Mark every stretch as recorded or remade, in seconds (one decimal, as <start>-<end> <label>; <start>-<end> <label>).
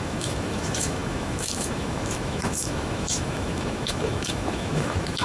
0.0-5.2 remade